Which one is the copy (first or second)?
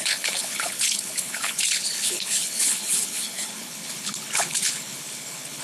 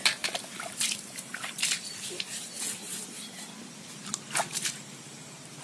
first